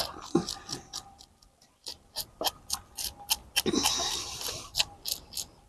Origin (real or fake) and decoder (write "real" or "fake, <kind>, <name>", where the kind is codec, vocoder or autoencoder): real